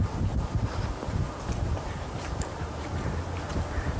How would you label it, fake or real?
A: fake